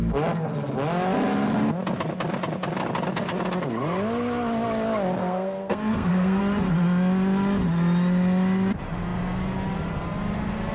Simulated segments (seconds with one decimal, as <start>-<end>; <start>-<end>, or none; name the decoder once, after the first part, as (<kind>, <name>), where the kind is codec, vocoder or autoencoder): 5.2-6.4 (codec, SNAC)